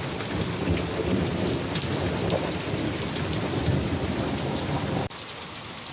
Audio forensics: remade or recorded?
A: recorded